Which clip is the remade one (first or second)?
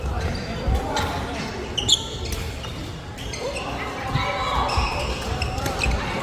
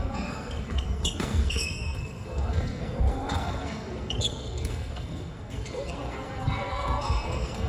second